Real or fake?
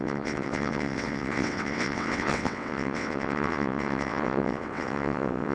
fake